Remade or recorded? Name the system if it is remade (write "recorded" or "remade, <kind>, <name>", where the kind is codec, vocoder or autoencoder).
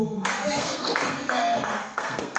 remade, codec, SNAC